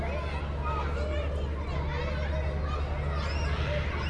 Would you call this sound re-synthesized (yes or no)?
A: no